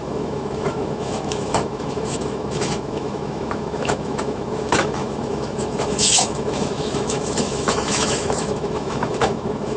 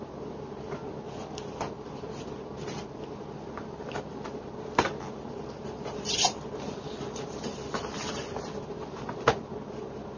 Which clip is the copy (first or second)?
first